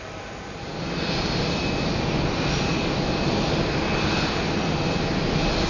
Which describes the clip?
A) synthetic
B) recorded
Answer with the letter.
B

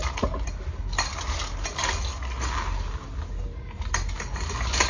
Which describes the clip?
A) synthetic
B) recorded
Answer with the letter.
B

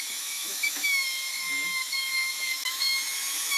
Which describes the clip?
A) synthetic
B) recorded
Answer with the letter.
A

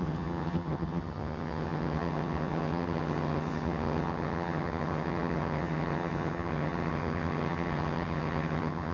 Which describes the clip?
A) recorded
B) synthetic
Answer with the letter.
B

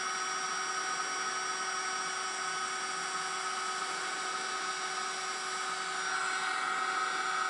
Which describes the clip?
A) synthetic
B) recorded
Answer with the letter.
B